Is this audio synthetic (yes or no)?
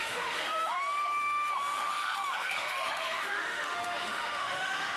yes